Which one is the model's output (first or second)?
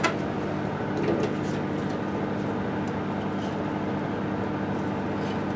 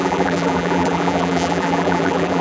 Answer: second